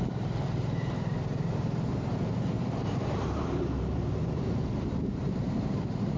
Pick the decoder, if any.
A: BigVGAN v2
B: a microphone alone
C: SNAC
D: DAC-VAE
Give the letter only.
A